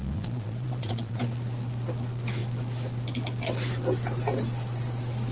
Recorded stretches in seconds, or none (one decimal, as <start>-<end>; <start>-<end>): 1.2-5.3